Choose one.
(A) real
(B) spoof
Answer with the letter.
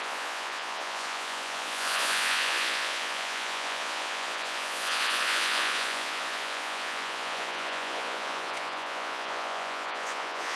B